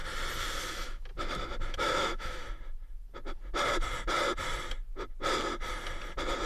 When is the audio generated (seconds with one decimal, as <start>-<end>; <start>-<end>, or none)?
0.7-1.1; 1.7-2.4